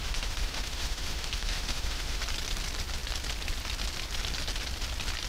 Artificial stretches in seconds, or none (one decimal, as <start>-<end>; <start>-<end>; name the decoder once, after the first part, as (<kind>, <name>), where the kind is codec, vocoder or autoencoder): 0.0-2.2 (autoencoder, DAC-VAE)

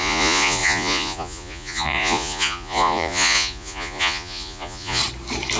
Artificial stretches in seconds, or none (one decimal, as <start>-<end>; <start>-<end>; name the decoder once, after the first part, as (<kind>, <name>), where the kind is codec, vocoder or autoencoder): 0.0-5.0 (vocoder, Vocos)

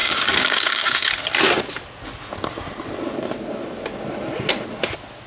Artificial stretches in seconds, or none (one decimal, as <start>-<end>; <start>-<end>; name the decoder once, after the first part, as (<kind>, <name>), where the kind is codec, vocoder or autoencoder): 0.0-1.1 (codec, DAC)

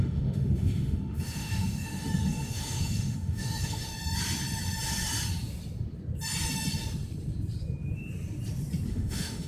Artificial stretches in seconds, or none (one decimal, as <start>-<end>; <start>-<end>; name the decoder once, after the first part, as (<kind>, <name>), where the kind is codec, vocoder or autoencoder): 0.0-3.9 (autoencoder, DAC-VAE); 8.9-9.5

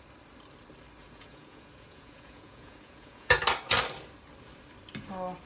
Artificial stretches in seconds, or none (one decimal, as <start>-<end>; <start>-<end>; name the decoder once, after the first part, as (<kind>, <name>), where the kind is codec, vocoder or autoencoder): 1.0-3.4 (vocoder, Vocos)